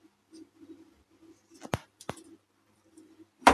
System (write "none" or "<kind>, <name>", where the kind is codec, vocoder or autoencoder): none